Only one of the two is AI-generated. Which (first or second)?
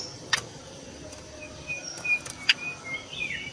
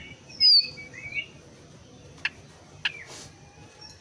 first